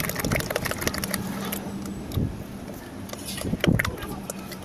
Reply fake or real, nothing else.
real